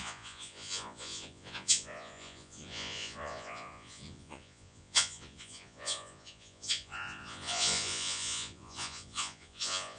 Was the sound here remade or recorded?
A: remade